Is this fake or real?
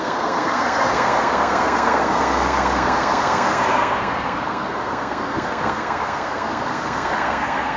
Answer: fake